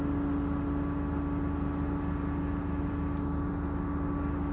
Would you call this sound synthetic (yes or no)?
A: no